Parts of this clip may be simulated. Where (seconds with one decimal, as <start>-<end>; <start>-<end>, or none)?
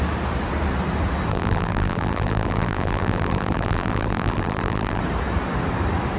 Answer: 1.3-5.0